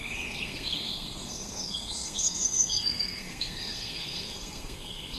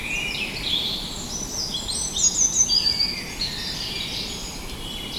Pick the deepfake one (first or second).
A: first